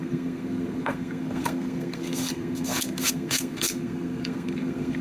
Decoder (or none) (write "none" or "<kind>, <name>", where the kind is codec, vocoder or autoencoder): codec, SNAC